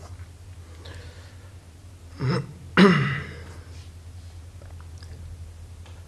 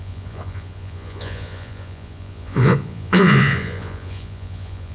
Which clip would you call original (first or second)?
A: first